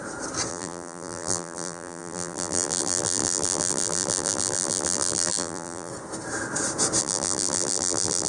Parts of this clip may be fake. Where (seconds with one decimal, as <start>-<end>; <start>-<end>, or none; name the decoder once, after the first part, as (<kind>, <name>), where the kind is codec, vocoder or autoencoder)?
0.5-5.9 (vocoder, BigVGAN v2); 7.0-8.3